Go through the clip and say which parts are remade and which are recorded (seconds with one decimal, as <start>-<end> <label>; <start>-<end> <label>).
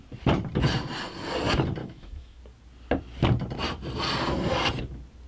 0.0-1.8 recorded; 1.8-2.4 remade; 2.4-5.3 recorded